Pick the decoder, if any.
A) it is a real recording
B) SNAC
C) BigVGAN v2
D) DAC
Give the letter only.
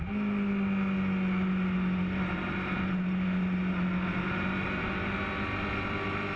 A